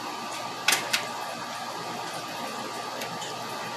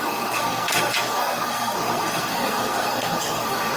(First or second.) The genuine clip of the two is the first